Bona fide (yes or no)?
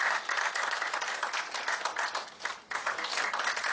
yes